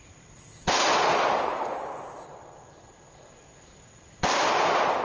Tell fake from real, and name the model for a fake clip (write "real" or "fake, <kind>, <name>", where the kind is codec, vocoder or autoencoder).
real